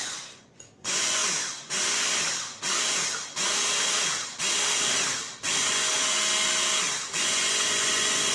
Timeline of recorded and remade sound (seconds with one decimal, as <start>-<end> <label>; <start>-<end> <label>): 0.0-1.2 remade; 1.2-5.5 recorded; 5.5-5.9 remade; 5.9-7.2 recorded; 7.2-8.3 remade